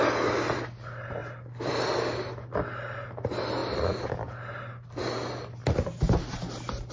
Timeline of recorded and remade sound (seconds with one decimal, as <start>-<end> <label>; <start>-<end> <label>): 0.0-6.9 recorded